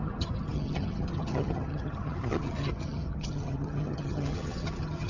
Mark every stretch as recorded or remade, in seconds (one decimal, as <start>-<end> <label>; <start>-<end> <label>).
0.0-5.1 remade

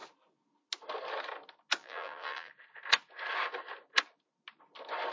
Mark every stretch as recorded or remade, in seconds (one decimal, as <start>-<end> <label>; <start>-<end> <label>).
0.0-1.8 recorded; 1.8-2.5 remade; 2.5-5.1 recorded

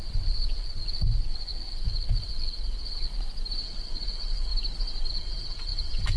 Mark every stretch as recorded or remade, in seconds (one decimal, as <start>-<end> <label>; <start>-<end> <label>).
0.0-3.1 remade; 3.1-3.6 recorded; 3.6-4.5 remade; 4.5-5.1 recorded; 5.1-6.2 remade

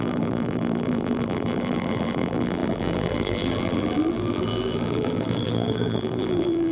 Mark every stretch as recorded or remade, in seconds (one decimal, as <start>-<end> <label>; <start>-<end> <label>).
0.0-6.7 remade

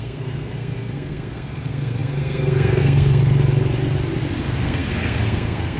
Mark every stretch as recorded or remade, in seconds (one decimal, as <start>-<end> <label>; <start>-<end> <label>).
0.0-3.2 remade; 3.2-4.3 recorded; 4.3-5.8 remade

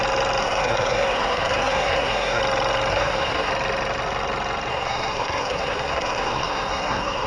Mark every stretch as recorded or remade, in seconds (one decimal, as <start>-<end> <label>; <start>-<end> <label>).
0.0-0.4 recorded; 0.4-2.4 remade; 2.4-2.9 recorded; 2.9-3.5 remade; 3.5-4.7 recorded; 4.7-7.3 remade

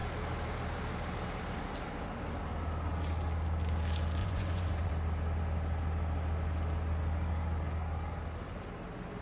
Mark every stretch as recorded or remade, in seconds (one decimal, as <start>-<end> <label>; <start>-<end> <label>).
0.0-4.2 recorded; 4.2-4.9 remade; 4.9-9.2 recorded